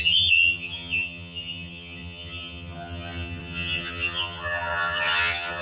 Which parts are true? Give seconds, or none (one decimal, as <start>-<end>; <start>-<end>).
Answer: none